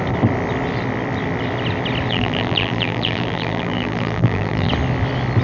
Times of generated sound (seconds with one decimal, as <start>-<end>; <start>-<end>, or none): 2.1-4.7